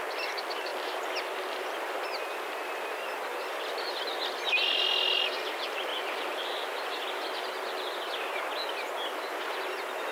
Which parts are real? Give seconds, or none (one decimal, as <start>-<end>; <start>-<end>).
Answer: 0.0-5.9; 7.4-10.1